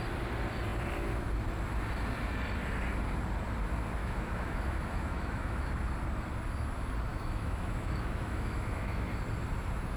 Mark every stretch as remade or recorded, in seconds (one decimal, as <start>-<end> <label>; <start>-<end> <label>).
0.0-4.0 recorded; 4.0-5.7 remade; 5.7-7.1 recorded; 7.1-9.1 remade; 9.1-10.0 recorded

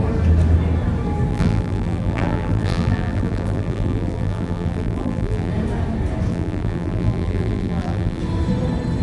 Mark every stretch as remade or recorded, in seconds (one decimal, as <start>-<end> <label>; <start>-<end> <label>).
0.0-1.3 recorded; 1.3-5.5 remade; 5.5-6.3 recorded; 6.3-8.2 remade; 8.2-9.0 recorded